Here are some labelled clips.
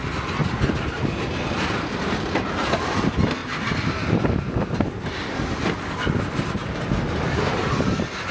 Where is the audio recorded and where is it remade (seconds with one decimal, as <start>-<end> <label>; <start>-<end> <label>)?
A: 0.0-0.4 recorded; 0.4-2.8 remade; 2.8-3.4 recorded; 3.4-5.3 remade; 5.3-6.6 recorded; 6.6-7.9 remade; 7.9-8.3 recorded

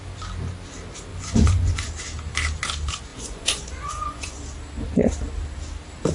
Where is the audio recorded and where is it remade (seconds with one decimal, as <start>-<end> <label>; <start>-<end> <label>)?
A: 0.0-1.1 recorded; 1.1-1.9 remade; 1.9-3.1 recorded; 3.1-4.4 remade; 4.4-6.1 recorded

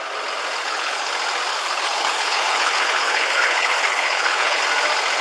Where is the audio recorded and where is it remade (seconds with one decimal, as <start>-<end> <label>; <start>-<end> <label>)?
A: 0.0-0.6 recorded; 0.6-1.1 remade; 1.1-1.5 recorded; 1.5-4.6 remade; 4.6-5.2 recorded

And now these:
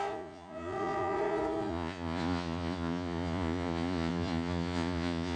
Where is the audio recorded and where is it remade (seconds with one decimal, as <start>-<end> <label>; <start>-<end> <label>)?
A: 0.0-5.4 remade